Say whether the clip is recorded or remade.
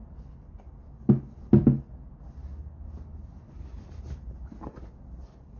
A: recorded